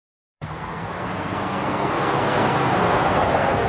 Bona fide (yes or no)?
no